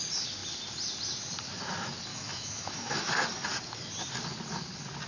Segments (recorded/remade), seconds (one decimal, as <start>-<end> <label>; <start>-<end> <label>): 0.0-2.1 recorded; 2.1-3.1 remade; 3.1-5.1 recorded

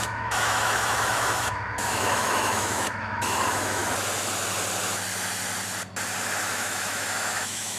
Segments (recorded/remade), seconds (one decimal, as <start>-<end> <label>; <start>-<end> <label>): 0.0-3.8 remade; 3.8-6.5 recorded; 6.5-7.8 remade

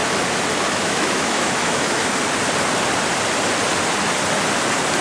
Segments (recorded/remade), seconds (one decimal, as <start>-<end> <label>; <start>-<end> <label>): 0.0-0.7 recorded; 0.7-2.0 remade; 2.0-5.0 recorded

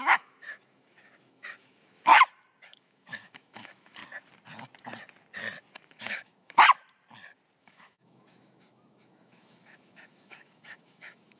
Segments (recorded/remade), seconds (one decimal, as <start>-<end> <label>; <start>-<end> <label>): 0.0-2.1 remade; 2.1-2.7 recorded; 2.7-4.0 remade; 4.0-5.7 recorded; 5.7-6.7 remade; 6.7-7.6 recorded; 7.6-11.4 remade